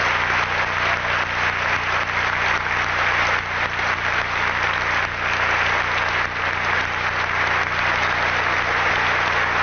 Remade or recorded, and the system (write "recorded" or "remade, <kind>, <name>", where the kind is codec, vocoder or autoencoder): recorded